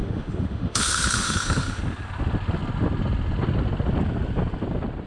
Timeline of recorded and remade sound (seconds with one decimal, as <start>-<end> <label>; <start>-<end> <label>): 0.0-1.8 remade; 1.8-5.1 recorded